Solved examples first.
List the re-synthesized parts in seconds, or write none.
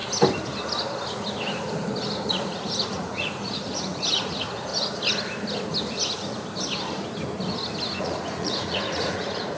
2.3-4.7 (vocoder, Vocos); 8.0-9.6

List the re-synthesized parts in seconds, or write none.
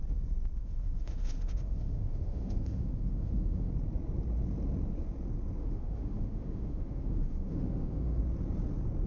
0.6-3.7 (autoencoder, DAC-VAE); 5.6-8.2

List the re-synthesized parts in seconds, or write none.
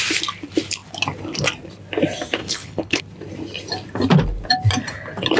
2.4-3.0 (codec, HILCodec)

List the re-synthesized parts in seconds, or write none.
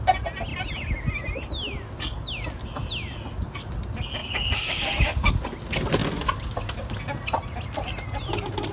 4.2-5.3 (codec, DAC)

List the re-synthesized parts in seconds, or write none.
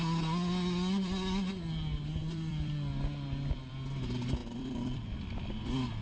2.2-3.7 (vocoder, BigVGAN v2); 4.4-6.0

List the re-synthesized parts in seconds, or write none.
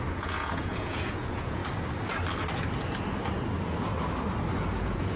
0.0-1.6 (vocoder, Vocos); 4.7-5.2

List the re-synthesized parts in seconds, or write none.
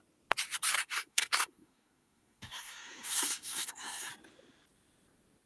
0.8-4.1 (codec, SNAC)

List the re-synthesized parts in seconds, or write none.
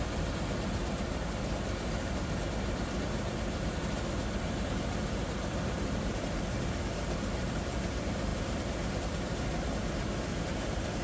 none